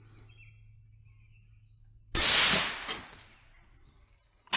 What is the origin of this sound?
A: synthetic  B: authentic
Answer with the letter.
B